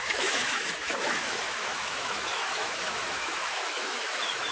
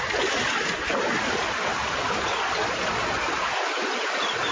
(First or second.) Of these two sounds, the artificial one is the first